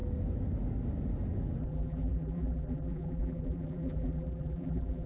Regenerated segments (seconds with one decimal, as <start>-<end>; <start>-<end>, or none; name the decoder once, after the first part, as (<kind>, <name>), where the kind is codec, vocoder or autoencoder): 1.6-5.1 (vocoder, BigVGAN v2)